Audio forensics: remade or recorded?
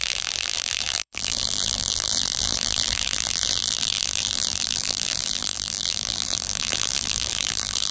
remade